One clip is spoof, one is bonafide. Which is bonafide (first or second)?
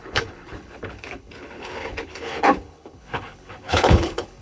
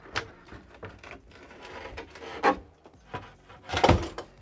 second